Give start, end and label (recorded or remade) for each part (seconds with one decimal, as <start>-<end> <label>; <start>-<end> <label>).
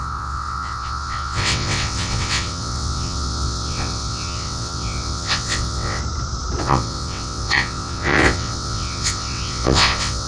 0.0-6.0 remade; 6.0-6.6 recorded; 6.6-10.3 remade